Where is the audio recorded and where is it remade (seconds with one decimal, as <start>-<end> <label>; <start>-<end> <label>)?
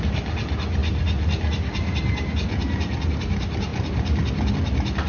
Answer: 0.0-5.1 recorded